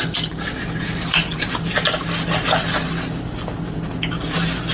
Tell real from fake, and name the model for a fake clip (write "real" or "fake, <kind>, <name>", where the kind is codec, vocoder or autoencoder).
real